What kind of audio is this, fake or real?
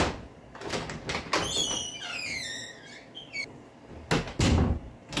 real